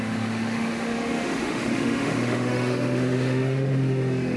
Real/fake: fake